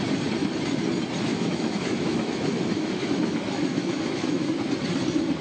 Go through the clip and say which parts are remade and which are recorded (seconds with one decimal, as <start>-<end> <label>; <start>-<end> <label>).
0.0-1.3 recorded; 1.3-4.5 remade; 4.5-5.4 recorded